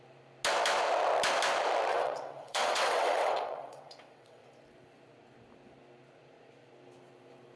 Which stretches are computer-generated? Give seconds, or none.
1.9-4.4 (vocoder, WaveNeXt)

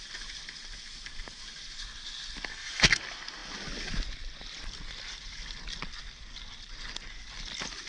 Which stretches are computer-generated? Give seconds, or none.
2.5-3.0 (codec, SNAC)

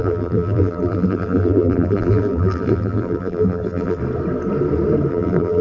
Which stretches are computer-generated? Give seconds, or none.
0.0-4.0 (vocoder, BigVGAN v2); 5.1-5.6

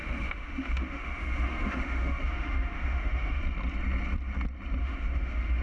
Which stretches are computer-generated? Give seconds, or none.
0.0-3.4 (autoencoder, DAC-VAE); 4.8-5.6

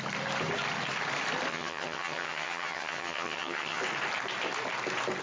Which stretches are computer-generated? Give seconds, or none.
1.5-3.8 (vocoder, HiFi-GAN)

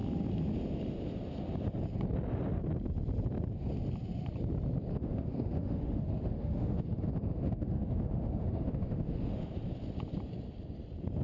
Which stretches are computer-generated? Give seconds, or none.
4.9-9.5 (autoencoder, DAC-VAE)